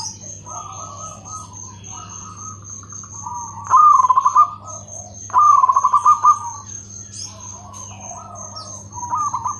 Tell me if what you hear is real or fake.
real